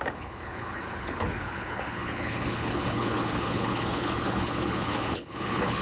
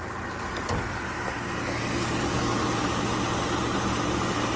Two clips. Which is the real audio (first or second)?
second